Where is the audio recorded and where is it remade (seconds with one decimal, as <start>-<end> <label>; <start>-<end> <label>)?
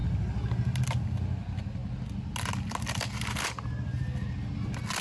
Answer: 0.0-5.0 recorded